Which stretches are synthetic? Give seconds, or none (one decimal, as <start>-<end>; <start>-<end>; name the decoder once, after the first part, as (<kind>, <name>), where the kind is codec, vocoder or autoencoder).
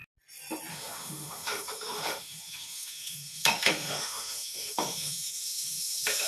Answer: 0.7-6.3 (autoencoder, DAC-VAE)